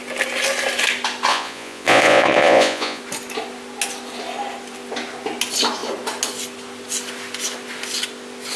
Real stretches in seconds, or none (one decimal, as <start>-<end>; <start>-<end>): 0.0-1.3; 3.0-8.6